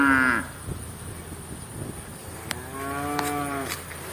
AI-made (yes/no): no